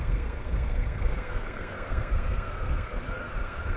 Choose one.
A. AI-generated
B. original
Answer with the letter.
A